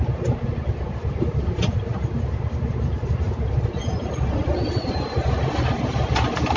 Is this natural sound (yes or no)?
yes